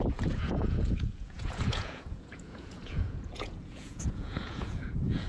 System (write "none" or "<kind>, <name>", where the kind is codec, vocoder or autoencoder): vocoder, Vocos